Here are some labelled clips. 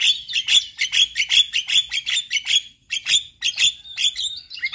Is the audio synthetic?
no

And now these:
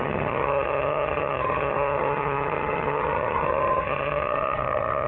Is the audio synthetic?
yes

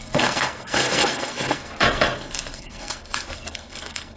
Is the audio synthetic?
yes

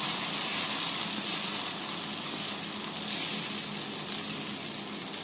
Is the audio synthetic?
no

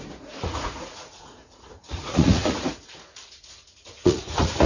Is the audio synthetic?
yes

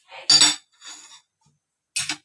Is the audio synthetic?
no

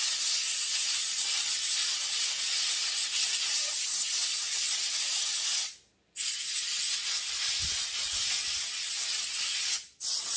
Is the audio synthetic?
no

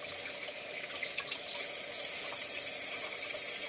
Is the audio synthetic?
no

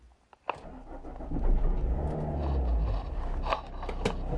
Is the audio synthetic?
no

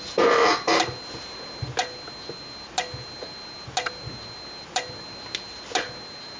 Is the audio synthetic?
no